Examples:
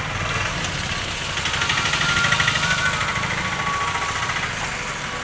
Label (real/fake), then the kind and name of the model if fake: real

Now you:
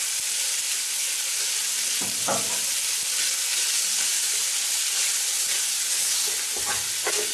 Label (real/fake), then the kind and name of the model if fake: real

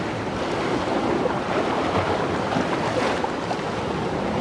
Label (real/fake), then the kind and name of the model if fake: real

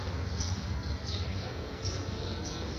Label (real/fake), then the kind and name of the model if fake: fake, codec, SNAC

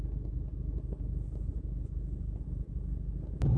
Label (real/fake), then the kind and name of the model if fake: real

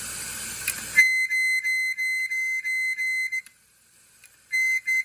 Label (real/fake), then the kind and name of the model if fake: real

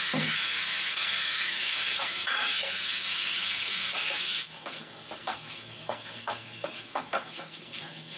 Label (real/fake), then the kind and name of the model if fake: fake, codec, SNAC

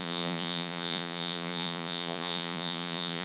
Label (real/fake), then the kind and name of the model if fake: fake, vocoder, Vocos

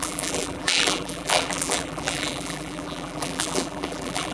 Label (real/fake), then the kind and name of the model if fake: fake, vocoder, BigVGAN v2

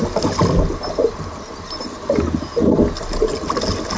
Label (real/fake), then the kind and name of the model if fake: real